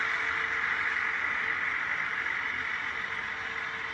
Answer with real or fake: real